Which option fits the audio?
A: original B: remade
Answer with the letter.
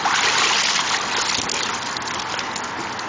A